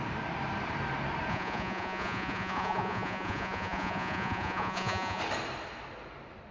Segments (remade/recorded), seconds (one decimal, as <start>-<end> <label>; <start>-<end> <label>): 0.0-1.3 recorded; 1.3-5.2 remade; 5.2-6.5 recorded